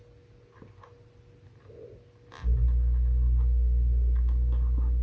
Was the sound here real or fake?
real